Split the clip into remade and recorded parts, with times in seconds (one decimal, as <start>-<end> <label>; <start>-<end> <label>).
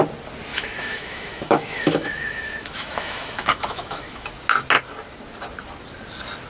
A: 0.0-0.5 recorded; 0.5-4.3 remade; 4.3-6.5 recorded